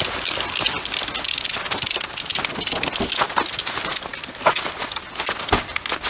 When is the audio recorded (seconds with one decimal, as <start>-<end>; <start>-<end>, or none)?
0.0-6.1